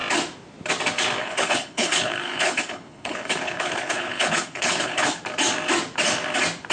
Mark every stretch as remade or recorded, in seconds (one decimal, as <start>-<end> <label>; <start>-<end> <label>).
0.0-1.2 recorded; 1.2-5.2 remade; 5.2-6.7 recorded